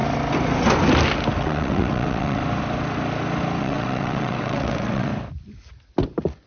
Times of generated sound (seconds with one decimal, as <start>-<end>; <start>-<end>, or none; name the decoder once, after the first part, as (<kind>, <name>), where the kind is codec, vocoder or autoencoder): 1.4-2.4 (vocoder, WaveNeXt); 3.6-5.1